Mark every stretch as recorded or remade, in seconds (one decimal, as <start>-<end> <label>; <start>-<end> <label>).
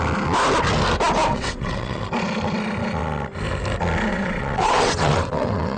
0.0-1.3 recorded; 1.3-2.0 remade; 2.0-4.1 recorded; 4.1-5.8 remade